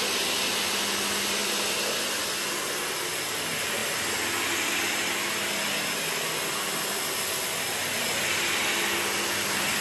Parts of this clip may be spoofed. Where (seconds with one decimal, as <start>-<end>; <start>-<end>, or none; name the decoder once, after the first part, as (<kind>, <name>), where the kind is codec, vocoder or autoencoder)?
none